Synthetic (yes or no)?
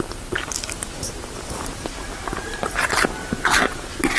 no